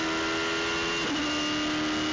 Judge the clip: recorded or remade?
recorded